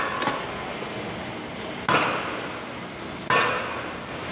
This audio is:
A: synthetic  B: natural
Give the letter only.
B